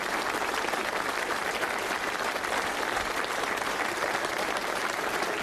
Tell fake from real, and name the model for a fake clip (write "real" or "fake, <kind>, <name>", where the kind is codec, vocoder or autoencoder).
real